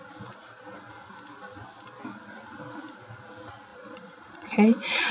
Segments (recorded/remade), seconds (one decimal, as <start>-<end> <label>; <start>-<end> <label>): 0.0-3.7 recorded; 3.7-5.1 remade